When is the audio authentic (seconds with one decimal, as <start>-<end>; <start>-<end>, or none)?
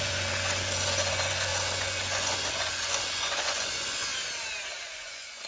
4.1-4.6